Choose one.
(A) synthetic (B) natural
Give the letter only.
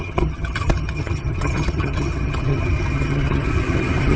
A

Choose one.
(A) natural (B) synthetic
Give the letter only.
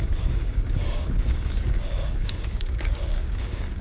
B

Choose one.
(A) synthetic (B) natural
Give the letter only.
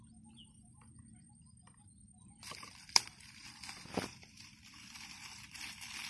A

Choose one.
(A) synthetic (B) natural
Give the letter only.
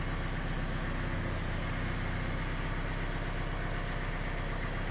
B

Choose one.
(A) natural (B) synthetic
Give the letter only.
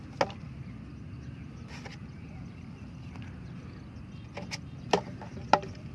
A